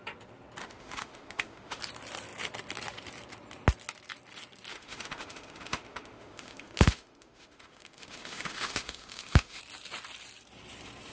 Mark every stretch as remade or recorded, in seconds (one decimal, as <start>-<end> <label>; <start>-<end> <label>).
0.0-0.6 recorded; 0.6-1.8 remade; 1.8-4.7 recorded; 4.7-9.6 remade; 9.6-11.1 recorded